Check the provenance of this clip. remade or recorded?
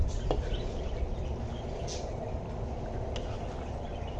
recorded